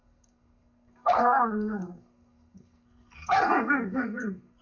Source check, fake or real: fake